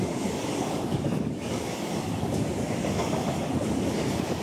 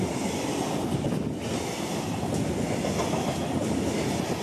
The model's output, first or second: first